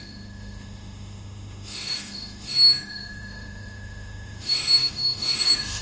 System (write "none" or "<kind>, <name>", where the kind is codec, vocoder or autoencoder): autoencoder, DAC-VAE